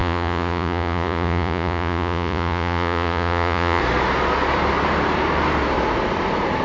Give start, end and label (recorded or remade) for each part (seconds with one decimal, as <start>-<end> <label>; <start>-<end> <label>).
0.0-3.8 remade; 3.8-6.6 recorded